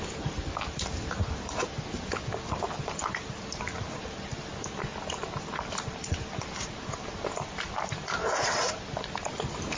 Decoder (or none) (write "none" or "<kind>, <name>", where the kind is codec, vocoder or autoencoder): none